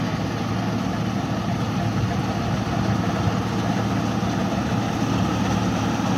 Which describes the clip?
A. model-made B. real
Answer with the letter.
B